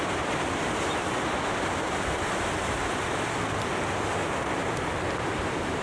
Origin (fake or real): real